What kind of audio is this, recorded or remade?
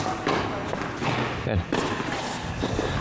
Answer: recorded